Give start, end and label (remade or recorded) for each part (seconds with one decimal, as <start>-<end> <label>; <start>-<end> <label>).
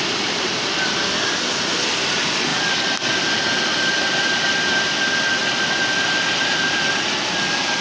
0.0-7.8 recorded